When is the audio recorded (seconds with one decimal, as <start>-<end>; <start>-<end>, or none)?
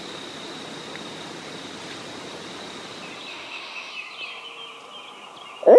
0.0-3.3; 3.9-5.8